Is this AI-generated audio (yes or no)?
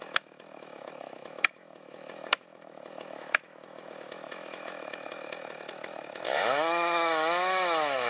yes